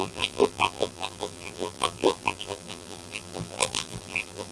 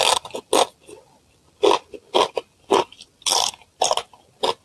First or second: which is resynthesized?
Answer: first